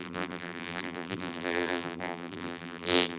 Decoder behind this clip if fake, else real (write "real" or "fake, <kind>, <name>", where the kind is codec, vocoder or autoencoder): fake, vocoder, BigVGAN v2